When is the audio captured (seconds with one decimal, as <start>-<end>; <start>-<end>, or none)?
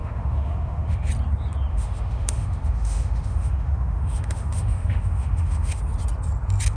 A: 1.1-1.7; 5.8-6.8